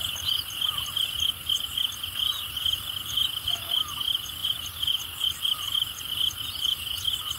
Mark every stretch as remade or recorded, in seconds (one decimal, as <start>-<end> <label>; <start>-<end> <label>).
0.0-7.4 recorded